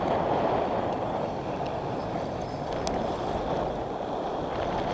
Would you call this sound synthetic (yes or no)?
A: no